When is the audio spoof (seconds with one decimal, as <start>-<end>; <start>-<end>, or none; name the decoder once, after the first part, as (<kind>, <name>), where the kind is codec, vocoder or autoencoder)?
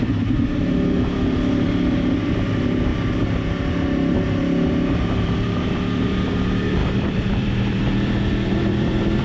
0.0-2.9 (vocoder, BigVGAN v2); 5.2-9.2